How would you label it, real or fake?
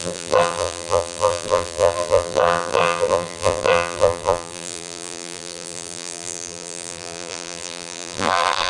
fake